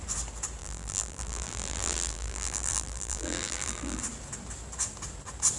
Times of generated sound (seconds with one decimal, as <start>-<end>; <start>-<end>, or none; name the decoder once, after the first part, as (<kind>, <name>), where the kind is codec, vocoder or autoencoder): 0.6-4.0 (vocoder, BigVGAN v2)